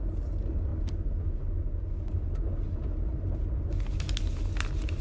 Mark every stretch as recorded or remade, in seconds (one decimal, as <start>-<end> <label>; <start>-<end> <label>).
0.0-5.0 recorded